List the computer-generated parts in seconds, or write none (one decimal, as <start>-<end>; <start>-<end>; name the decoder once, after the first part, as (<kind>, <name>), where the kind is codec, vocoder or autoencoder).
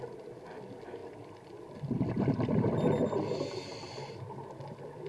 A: none